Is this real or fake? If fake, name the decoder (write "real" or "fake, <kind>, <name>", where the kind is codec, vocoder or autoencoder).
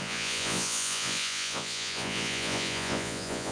fake, vocoder, Vocos